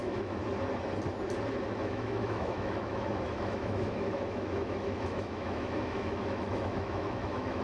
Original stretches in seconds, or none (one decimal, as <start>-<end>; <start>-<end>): 0.4-1.8